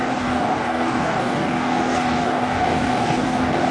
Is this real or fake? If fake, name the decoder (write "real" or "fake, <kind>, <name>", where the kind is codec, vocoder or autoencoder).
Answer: fake, codec, DAC